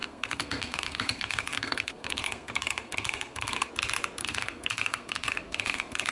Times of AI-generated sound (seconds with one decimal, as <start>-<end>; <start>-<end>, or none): 0.0-3.7; 4.2-6.1